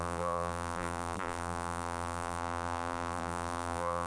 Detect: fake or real fake